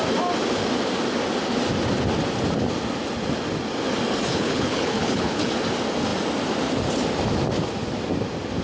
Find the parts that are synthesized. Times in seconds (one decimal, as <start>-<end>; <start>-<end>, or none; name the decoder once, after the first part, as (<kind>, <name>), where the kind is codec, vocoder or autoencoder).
4.3-5.5 (codec, HILCodec)